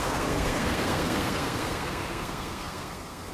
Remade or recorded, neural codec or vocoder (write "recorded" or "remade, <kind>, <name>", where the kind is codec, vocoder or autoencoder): remade, codec, SNAC